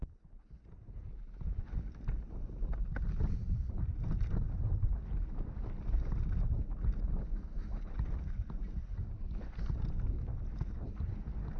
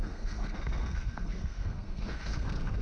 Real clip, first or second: first